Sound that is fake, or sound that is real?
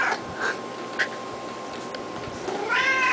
real